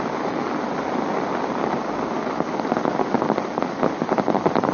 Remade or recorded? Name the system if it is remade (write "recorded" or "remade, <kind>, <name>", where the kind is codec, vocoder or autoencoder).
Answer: recorded